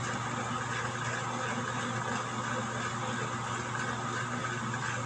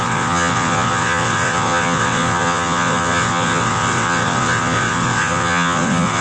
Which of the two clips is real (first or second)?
first